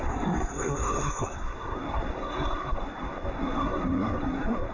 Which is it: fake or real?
fake